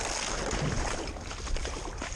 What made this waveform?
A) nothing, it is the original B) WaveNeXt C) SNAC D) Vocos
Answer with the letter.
A